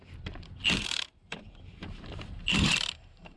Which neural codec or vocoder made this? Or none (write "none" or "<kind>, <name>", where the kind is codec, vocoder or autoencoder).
vocoder, BigVGAN v2